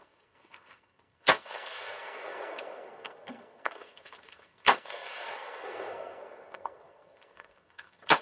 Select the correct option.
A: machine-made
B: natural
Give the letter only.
A